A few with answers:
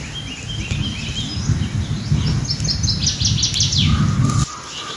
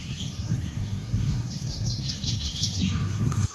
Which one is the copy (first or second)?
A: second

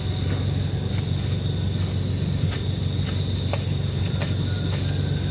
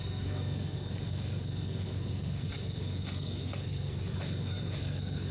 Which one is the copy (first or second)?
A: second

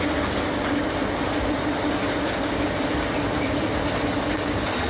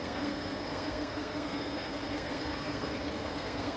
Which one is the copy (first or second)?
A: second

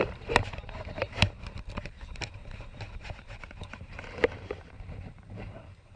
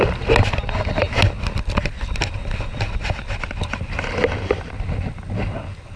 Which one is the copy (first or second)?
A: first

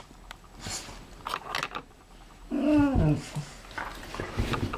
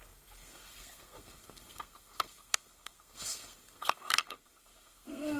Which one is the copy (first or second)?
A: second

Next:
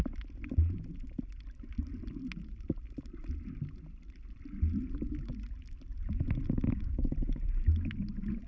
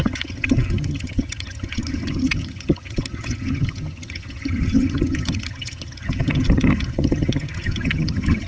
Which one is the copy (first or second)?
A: second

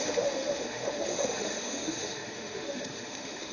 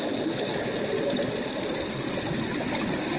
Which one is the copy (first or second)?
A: first